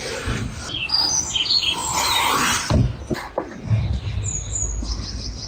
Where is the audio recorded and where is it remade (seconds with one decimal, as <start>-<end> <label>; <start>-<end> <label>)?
0.0-5.5 recorded